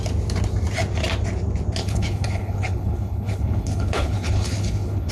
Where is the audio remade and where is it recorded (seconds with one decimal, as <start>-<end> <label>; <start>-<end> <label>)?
0.0-1.8 recorded; 1.8-5.1 remade